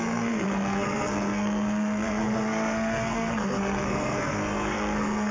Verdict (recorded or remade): remade